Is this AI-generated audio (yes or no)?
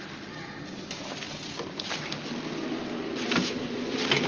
no